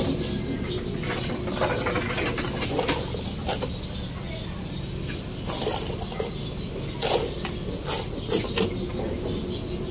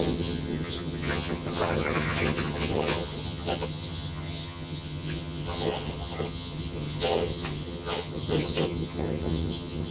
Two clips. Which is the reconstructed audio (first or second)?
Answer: second